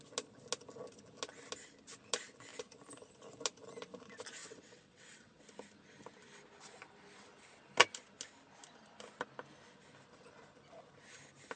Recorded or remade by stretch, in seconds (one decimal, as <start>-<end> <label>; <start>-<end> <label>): 0.0-4.4 recorded; 4.4-5.4 remade; 5.4-11.6 recorded